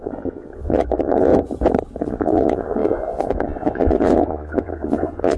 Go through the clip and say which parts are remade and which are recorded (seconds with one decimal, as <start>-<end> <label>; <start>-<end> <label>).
0.0-1.3 remade; 1.3-2.0 recorded; 2.0-5.4 remade